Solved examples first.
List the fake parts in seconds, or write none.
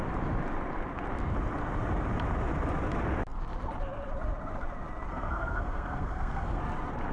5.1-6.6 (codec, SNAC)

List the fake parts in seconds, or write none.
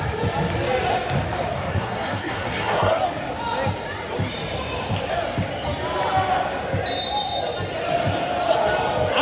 1.7-3.0 (codec, SNAC)